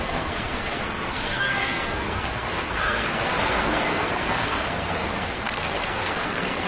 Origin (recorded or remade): remade